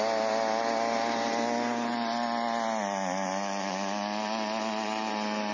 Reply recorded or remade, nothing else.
recorded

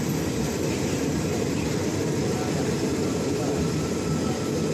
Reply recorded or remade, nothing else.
remade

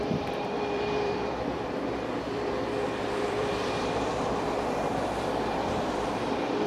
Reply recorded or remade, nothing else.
remade